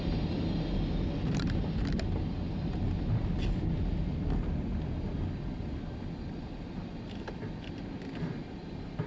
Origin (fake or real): real